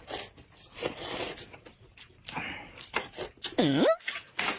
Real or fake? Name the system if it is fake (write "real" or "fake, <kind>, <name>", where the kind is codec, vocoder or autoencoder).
real